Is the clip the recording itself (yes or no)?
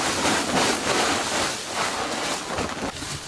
yes